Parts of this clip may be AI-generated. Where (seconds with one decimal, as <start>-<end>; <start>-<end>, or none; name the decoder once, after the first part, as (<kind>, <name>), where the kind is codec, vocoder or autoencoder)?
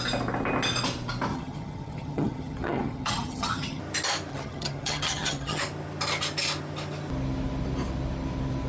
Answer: 1.3-3.8 (vocoder, HiFi-GAN); 4.3-5.6